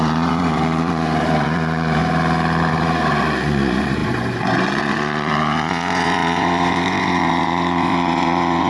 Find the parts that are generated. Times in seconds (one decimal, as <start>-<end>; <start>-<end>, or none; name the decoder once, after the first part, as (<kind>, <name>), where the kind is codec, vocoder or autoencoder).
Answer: 0.0-2.0 (vocoder, Vocos); 2.7-8.7